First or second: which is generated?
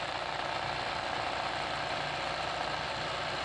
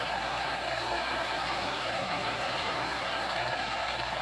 second